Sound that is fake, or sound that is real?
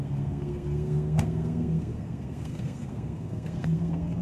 fake